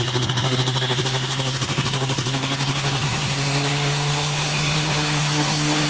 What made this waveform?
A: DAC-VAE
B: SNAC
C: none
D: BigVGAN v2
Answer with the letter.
B